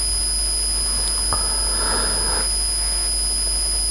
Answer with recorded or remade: recorded